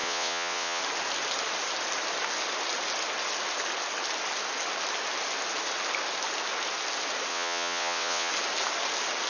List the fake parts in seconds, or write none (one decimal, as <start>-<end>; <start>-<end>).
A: 0.0-0.8; 7.3-8.3